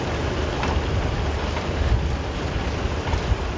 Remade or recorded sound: recorded